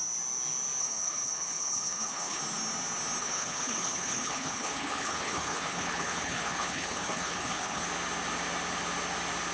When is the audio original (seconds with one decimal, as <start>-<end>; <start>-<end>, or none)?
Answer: 0.0-0.8; 2.4-3.2; 7.9-9.5